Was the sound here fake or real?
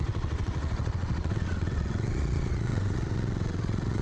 fake